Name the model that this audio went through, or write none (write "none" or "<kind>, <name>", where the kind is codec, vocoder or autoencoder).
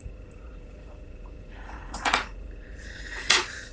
vocoder, Vocos